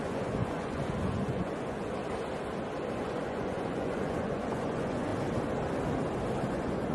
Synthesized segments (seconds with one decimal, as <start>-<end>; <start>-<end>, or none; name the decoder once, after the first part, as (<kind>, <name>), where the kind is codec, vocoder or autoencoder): 0.0-2.0 (vocoder, Vocos); 3.0-5.1; 6.5-6.9